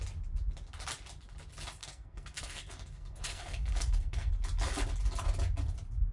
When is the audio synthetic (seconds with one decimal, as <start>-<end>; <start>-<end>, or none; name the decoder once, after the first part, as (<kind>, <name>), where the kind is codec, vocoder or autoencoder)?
1.8-4.3 (codec, SNAC)